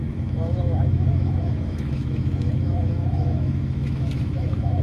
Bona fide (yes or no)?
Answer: no